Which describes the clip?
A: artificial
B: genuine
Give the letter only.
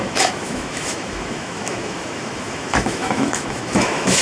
A